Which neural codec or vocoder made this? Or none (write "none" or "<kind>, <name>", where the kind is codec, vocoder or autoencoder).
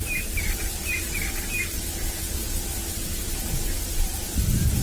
vocoder, BigVGAN v2